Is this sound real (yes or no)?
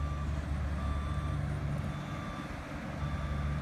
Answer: yes